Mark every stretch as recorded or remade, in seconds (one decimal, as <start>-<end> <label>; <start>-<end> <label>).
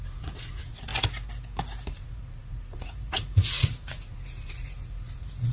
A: 0.0-0.9 remade; 0.9-1.9 recorded; 1.9-5.5 remade